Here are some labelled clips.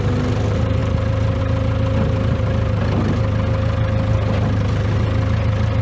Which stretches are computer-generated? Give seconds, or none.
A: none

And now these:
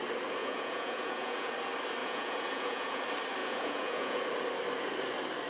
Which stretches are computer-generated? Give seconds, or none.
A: 0.4-1.5 (vocoder, Vocos); 2.0-3.0; 3.4-4.2

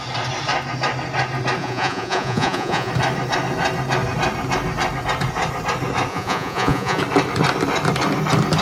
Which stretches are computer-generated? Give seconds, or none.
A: 1.6-2.9 (vocoder, Vocos); 6.1-7.0

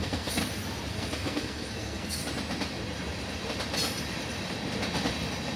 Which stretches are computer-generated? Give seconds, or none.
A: 0.0-0.4 (codec, SNAC); 0.9-2.2